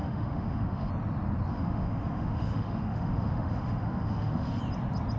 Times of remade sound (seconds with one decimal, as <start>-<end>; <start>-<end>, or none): 0.0-0.9; 1.5-4.6